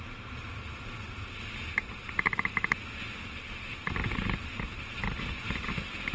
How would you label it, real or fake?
real